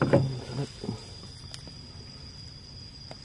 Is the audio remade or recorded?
recorded